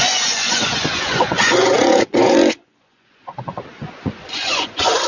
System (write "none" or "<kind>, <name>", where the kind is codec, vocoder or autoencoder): vocoder, Vocos